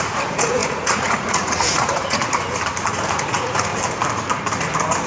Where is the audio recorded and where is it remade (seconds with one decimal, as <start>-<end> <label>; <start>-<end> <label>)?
0.0-2.2 remade; 2.2-3.1 recorded; 3.1-3.7 remade; 3.7-5.1 recorded